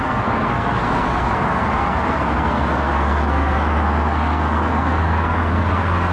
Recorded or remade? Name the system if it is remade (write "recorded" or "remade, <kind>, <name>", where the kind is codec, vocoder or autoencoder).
remade, codec, SNAC